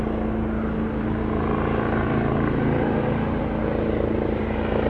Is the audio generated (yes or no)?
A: no